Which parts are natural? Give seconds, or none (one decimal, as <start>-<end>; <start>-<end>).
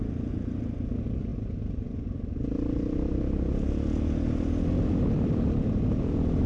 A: 0.0-6.5